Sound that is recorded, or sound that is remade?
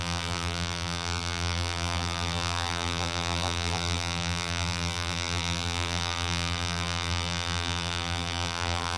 remade